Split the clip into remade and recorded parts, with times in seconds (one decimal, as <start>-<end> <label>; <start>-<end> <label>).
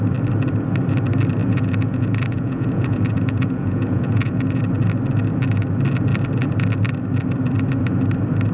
0.0-1.4 recorded; 1.4-4.6 remade; 4.6-8.5 recorded